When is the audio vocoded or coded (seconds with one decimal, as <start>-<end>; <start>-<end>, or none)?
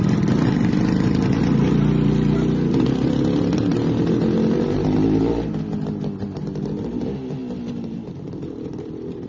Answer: none